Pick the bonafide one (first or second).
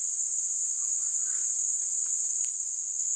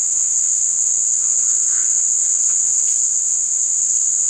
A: first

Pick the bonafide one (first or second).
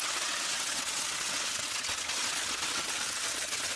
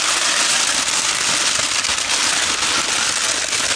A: second